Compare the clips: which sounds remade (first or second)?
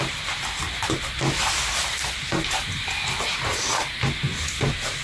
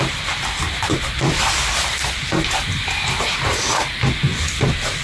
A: second